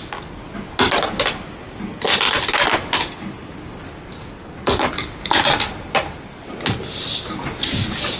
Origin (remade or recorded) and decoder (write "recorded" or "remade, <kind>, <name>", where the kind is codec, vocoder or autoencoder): recorded